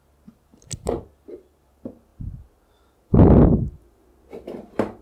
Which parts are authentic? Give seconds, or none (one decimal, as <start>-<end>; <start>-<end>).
0.0-5.0